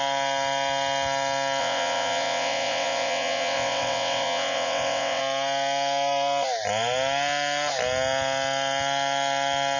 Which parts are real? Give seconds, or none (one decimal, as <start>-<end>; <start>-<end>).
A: 0.0-1.6; 5.2-9.8